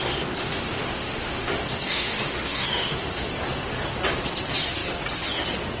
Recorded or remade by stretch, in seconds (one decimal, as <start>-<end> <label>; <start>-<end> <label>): 0.0-0.4 recorded; 0.4-3.3 remade; 3.3-5.8 recorded